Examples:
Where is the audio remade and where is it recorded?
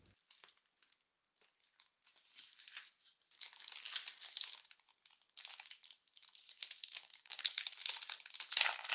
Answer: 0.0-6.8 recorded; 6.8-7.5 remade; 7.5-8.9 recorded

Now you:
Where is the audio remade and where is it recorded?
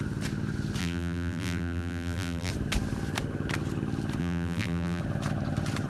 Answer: 0.0-0.8 recorded; 0.8-2.5 remade; 2.5-4.2 recorded; 4.2-5.0 remade; 5.0-5.9 recorded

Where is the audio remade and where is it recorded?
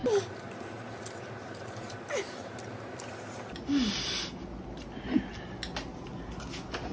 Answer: 0.0-6.9 recorded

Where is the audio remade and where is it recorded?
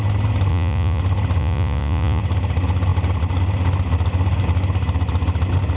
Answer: 0.0-0.5 recorded; 0.5-1.0 remade; 1.0-1.4 recorded; 1.4-2.2 remade; 2.2-5.8 recorded